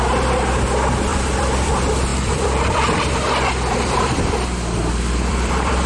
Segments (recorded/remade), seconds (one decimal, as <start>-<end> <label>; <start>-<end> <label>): 0.0-1.1 recorded; 1.1-1.7 remade; 1.7-2.1 recorded; 2.1-5.9 remade